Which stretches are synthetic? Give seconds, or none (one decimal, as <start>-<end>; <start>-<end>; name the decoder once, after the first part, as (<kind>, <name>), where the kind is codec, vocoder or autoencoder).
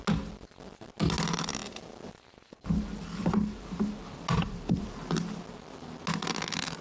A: none